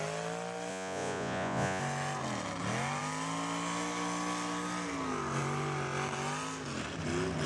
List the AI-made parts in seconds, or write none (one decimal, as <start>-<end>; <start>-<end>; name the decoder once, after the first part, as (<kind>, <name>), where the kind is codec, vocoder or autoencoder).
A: 0.7-1.8 (vocoder, Vocos)